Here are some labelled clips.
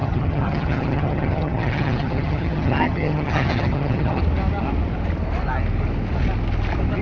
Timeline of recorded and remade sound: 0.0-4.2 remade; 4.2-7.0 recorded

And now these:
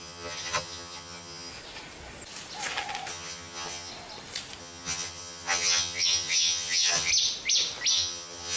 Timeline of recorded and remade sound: 0.0-1.5 remade; 1.5-3.1 recorded; 3.1-3.9 remade; 3.9-4.6 recorded; 4.6-7.1 remade; 7.1-7.9 recorded; 7.9-8.6 remade

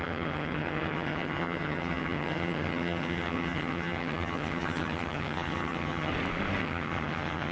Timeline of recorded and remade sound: 0.0-6.1 remade; 6.1-6.6 recorded; 6.6-7.5 remade